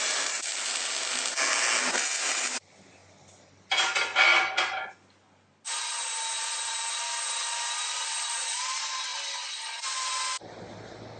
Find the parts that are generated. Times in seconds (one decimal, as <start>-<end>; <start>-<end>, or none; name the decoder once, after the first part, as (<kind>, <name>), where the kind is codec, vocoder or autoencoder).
none